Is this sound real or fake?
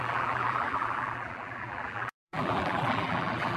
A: fake